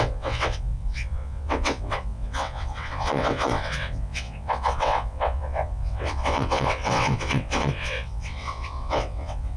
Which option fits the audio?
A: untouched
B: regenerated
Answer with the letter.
B